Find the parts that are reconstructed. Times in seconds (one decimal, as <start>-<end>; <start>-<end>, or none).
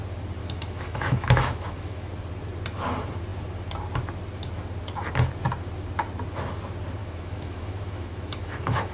0.4-2.1; 7.0-8.9